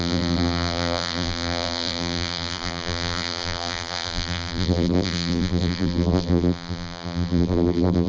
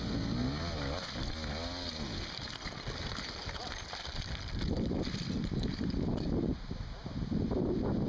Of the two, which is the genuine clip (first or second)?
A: second